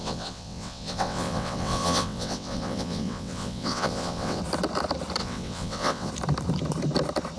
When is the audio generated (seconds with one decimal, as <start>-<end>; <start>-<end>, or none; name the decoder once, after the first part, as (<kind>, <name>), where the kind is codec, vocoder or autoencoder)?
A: 0.0-4.4 (vocoder, WaveNeXt); 5.2-6.1